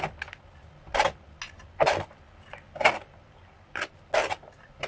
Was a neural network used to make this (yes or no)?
no